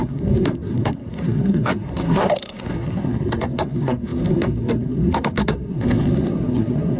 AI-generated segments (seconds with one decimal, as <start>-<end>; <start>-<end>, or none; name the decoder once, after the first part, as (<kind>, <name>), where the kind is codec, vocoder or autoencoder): 0.0-7.0 (codec, SNAC)